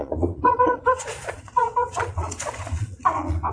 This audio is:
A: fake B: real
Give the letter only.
A